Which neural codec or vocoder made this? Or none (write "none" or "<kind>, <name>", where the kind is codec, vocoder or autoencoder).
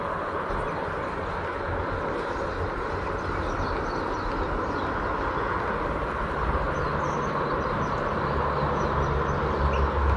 none